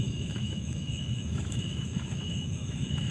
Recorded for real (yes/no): no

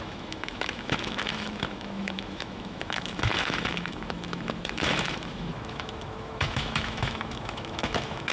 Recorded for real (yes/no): no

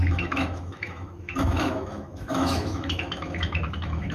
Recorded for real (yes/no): no